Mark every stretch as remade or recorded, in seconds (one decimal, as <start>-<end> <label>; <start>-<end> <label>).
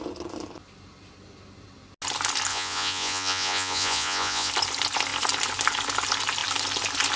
0.0-2.5 recorded; 2.5-4.5 remade; 4.5-7.2 recorded